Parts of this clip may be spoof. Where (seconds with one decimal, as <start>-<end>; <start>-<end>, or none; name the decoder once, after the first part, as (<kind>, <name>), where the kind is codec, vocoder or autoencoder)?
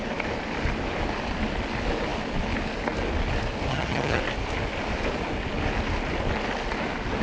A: 3.7-4.2 (vocoder, HiFi-GAN)